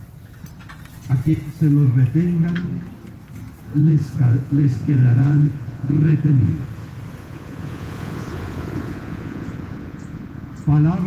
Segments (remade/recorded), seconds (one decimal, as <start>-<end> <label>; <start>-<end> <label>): 0.0-3.8 recorded; 3.8-6.5 remade; 6.5-7.2 recorded; 7.2-10.5 remade; 10.5-11.1 recorded